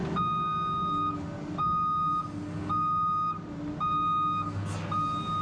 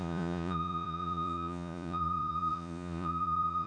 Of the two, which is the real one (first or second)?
first